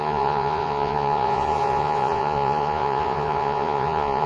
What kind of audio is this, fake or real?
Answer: fake